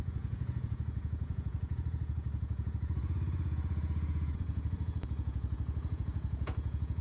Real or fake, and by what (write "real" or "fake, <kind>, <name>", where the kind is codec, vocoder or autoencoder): fake, vocoder, Vocos